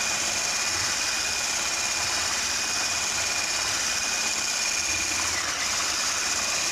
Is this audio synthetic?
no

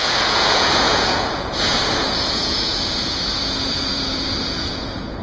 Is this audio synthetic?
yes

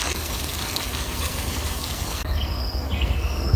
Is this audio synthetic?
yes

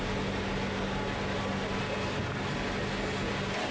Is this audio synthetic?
no